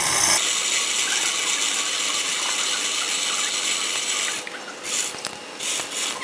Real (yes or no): yes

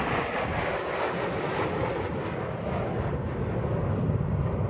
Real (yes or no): yes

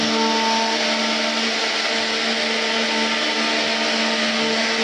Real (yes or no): yes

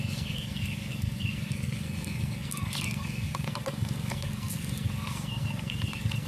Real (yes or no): no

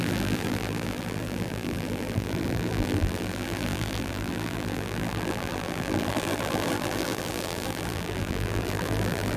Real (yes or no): no